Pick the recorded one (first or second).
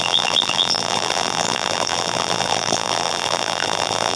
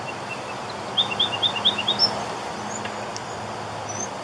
second